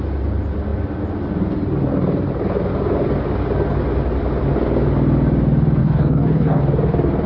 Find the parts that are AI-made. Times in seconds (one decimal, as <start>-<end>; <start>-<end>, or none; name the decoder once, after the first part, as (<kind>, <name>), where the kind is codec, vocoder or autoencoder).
5.8-6.6 (codec, DAC)

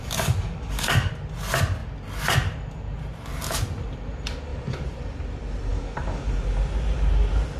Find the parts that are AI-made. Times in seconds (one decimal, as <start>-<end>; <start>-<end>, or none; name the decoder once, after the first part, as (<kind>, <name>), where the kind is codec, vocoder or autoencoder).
0.0-1.1 (codec, DAC); 5.7-6.3

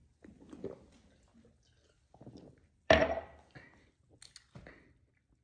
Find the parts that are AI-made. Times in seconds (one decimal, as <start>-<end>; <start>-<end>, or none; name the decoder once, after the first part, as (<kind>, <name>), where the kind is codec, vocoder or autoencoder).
none

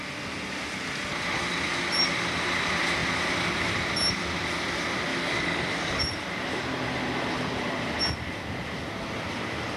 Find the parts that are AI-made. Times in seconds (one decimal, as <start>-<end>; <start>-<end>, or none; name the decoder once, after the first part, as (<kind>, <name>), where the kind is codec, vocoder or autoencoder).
5.1-6.0 (codec, DAC)

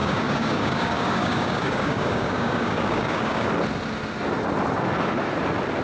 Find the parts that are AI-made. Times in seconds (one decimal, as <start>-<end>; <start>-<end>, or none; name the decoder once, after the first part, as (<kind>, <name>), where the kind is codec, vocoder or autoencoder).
0.0-3.5 (codec, DAC)

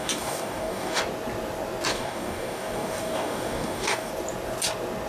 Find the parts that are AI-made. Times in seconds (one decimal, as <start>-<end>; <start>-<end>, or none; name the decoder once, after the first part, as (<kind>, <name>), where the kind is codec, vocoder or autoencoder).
0.0-1.0 (codec, DAC); 1.9-4.1

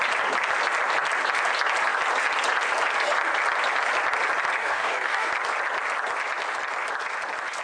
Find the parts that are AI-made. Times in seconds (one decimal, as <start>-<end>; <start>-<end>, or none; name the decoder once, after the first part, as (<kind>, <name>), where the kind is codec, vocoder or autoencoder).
4.6-5.3 (codec, DAC)